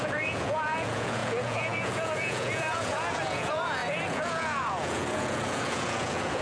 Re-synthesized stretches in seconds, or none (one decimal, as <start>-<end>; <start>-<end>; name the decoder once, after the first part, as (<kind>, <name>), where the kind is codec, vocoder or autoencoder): 0.0-6.4 (vocoder, Vocos)